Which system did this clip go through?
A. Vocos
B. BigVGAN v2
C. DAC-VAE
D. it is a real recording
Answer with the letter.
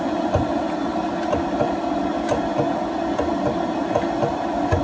D